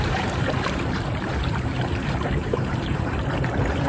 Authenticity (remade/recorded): remade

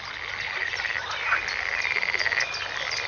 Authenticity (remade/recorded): recorded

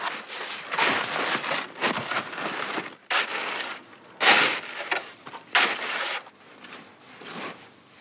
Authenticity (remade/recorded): remade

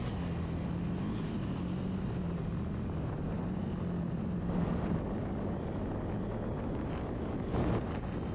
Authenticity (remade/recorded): recorded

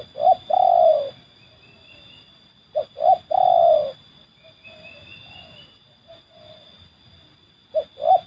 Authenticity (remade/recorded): recorded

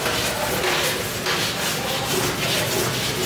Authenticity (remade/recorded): recorded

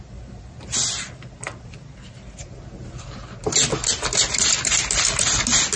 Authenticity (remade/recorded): recorded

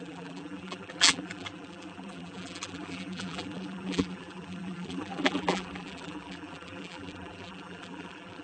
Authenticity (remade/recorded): remade